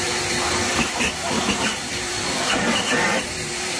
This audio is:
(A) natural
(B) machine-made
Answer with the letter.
B